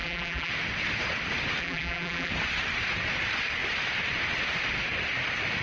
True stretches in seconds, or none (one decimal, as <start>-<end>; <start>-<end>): 0.5-1.6; 2.3-5.6